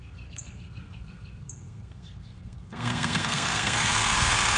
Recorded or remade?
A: remade